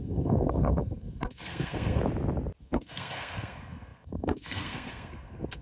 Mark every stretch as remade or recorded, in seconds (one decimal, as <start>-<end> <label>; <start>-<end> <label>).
0.0-2.0 remade; 2.0-2.6 recorded; 2.6-5.6 remade